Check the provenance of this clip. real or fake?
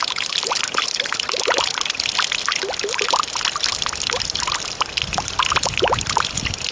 real